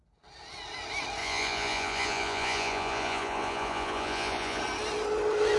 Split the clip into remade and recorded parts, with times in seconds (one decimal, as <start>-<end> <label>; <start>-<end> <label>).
0.0-1.2 recorded; 1.2-4.6 remade; 4.6-5.6 recorded